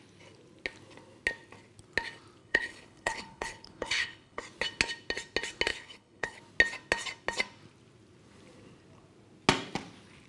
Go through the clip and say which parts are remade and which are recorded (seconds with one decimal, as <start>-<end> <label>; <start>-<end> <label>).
0.0-2.4 recorded; 2.4-4.4 remade; 4.4-5.7 recorded; 5.7-6.4 remade; 6.4-10.3 recorded